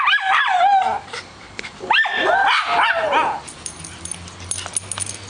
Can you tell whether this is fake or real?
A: real